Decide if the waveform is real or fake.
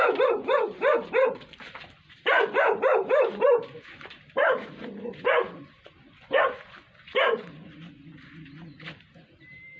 fake